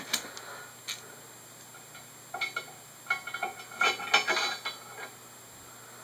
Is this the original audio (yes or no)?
yes